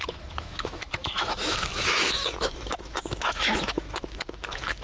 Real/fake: fake